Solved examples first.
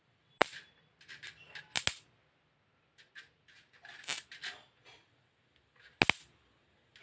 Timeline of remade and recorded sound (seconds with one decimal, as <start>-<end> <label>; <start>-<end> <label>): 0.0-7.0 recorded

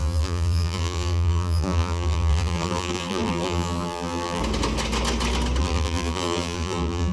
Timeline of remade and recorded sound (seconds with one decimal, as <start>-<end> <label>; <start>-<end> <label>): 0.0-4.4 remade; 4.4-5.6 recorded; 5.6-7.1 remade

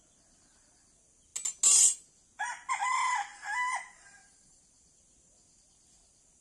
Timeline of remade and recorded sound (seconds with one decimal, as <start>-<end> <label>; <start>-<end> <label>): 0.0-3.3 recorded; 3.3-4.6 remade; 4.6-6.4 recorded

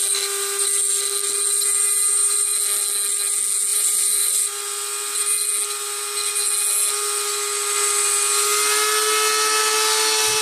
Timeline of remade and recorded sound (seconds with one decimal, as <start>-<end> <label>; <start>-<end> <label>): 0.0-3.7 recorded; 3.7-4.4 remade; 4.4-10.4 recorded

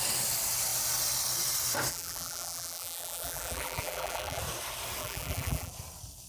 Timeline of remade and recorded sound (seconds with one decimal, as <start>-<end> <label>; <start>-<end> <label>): 0.0-1.9 recorded; 1.9-4.4 remade; 4.4-5.0 recorded; 5.0-5.7 remade; 5.7-6.3 recorded

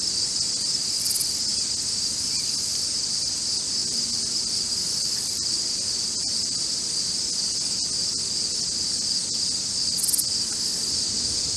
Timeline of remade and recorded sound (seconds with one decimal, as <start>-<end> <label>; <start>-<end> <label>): 0.0-3.8 recorded; 3.8-7.8 remade; 7.8-11.6 recorded